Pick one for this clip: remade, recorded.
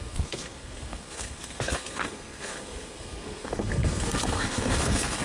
remade